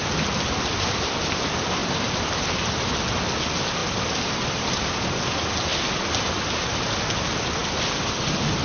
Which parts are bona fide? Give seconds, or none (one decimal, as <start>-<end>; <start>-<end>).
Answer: 0.0-1.8; 2.4-3.8; 5.0-5.7; 6.8-7.6